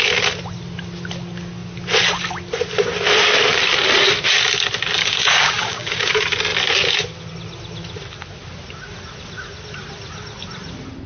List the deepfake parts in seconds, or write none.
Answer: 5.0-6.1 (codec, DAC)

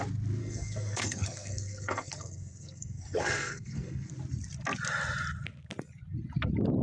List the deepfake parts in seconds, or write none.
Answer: 0.4-4.1 (codec, SNAC)

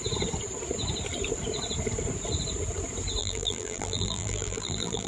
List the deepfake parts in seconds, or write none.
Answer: 3.2-5.1 (vocoder, BigVGAN v2)

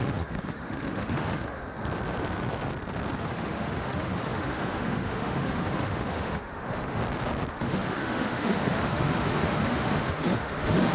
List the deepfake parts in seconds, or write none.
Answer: 0.0-1.6 (autoencoder, DAC-VAE); 3.2-7.0; 7.5-10.9

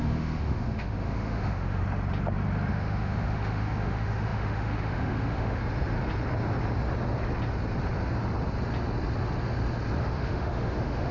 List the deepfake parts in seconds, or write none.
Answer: 0.0-1.8 (autoencoder, DAC-VAE); 2.7-5.6; 10.0-11.1